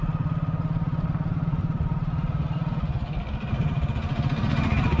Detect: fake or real real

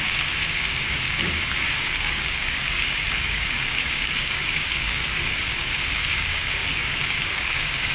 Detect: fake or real fake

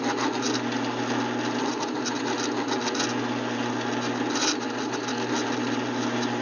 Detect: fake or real real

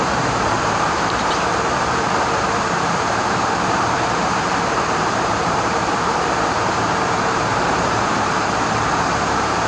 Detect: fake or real fake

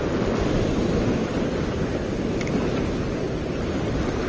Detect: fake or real real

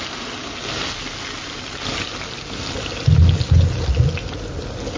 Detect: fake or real real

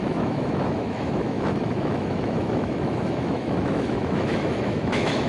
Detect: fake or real fake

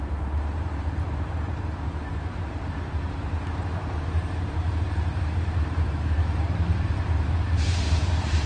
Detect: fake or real fake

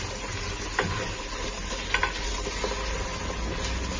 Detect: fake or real real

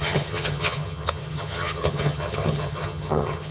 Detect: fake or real fake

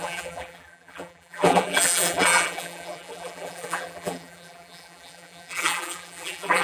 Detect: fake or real fake